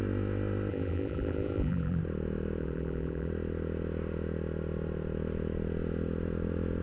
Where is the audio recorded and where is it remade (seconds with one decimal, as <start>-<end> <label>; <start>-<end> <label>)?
0.0-0.7 recorded; 0.7-2.0 remade; 2.0-2.6 recorded; 2.6-3.3 remade; 3.3-6.8 recorded